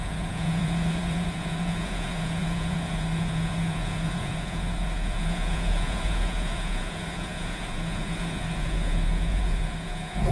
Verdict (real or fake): fake